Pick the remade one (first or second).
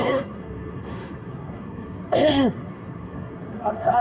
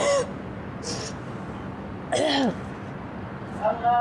first